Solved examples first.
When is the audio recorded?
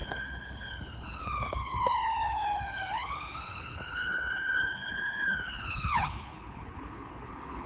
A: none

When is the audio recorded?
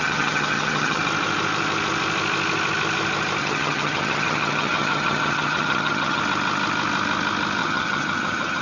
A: 1.0-3.4; 6.2-7.6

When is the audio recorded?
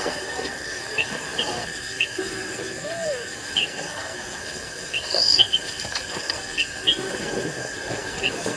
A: none